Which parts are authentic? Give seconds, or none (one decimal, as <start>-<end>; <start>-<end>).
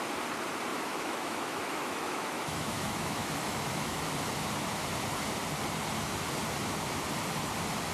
0.0-0.7; 4.0-7.9